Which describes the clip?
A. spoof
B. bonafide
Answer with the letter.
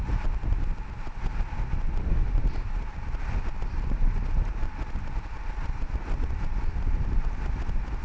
B